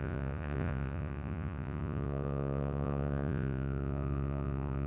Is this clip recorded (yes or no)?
no